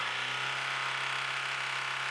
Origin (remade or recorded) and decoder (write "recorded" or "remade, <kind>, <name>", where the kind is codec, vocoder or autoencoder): recorded